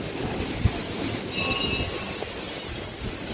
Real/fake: real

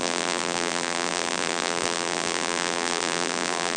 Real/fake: fake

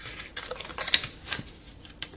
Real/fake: real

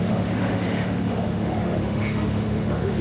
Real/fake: fake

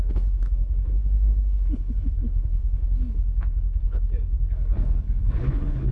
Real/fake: fake